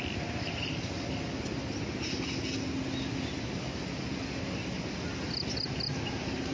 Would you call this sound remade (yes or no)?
no